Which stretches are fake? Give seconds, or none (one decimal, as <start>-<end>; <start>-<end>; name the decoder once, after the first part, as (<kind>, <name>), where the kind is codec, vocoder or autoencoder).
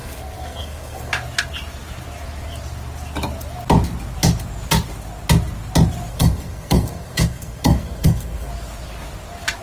0.0-1.1 (codec, SNAC); 6.1-8.5